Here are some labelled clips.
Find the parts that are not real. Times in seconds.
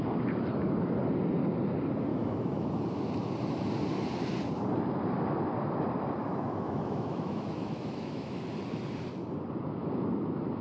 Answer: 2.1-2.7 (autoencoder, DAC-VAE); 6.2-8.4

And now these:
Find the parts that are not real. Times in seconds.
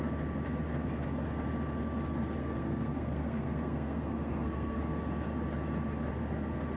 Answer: 2.4-4.8 (codec, SNAC)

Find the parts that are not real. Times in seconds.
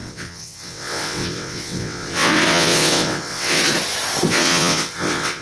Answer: 0.0-3.6 (vocoder, WaveNeXt); 4.3-5.4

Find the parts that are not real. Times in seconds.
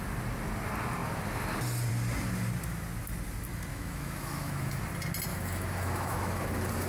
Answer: 3.7-4.8 (autoencoder, DAC-VAE); 5.3-6.4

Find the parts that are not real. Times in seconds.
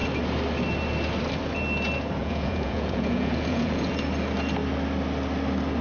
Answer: 2.2-3.9 (vocoder, Vocos)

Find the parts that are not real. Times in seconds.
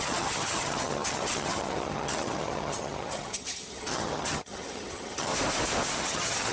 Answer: 0.0-5.3 (vocoder, HiFi-GAN); 5.9-6.5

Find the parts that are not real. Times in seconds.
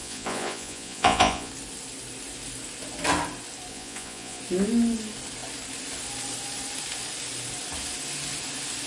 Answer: 0.0-1.5 (vocoder, Vocos); 3.7-4.4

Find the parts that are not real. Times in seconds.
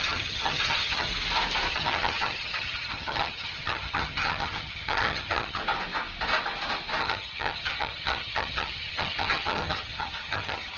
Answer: 0.0-1.1 (vocoder, HiFi-GAN); 1.7-5.6; 7.0-10.8